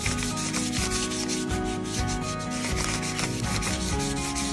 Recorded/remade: recorded